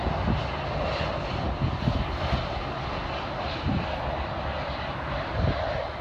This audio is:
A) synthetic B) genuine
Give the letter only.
B